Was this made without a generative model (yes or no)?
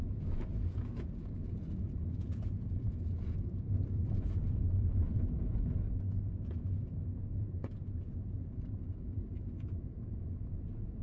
no